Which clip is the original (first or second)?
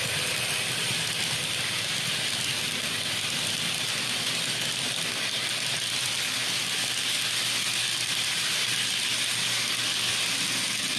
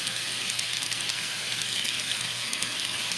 first